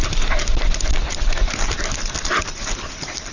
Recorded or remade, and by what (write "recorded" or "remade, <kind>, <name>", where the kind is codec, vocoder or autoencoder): recorded